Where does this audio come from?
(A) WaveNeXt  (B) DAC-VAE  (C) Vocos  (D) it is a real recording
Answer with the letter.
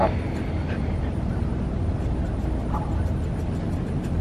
D